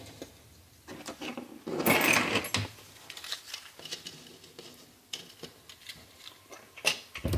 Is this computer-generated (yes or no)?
no